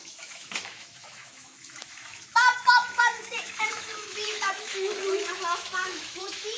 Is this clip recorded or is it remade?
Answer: remade